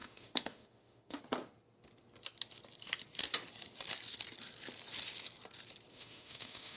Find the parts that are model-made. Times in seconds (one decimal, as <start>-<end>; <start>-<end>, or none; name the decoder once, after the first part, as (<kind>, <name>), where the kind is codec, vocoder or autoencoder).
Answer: 0.0-1.2 (autoencoder, DAC-VAE); 5.9-6.8